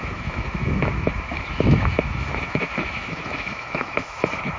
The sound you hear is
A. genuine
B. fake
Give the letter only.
B